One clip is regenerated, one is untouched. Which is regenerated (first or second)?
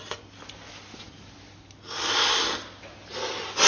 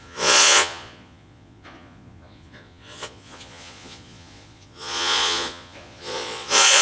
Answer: second